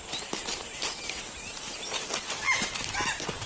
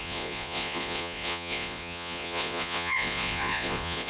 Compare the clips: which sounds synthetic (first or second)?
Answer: second